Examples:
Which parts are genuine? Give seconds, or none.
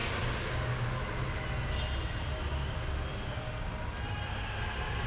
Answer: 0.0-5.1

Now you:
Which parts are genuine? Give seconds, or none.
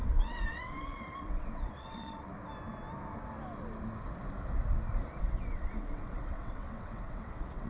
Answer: 2.3-5.2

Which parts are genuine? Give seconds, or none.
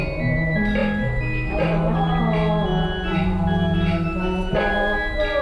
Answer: 0.0-5.4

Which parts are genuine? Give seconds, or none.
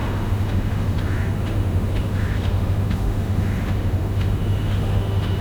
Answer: none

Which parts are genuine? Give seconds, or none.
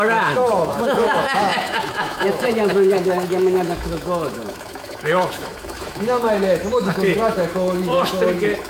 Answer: none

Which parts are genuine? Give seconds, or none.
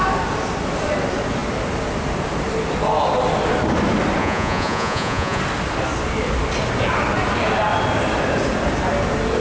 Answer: 0.0-4.2; 5.4-9.4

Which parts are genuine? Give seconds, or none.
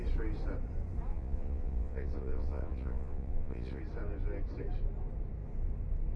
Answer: 0.0-1.1; 3.8-6.2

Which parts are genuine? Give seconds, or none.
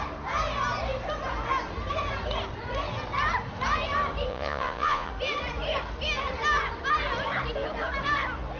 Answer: 0.0-4.3; 5.1-8.6